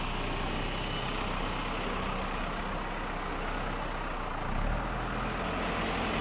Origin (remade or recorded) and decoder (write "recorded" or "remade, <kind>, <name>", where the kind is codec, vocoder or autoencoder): recorded